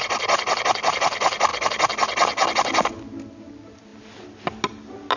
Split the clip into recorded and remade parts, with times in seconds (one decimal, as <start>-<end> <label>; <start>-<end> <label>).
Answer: 0.0-5.2 recorded